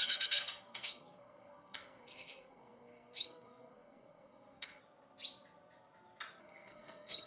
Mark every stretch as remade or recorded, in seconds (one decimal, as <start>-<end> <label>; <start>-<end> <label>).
0.0-4.8 remade; 4.8-6.4 recorded; 6.4-7.3 remade